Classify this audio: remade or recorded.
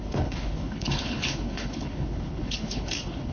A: remade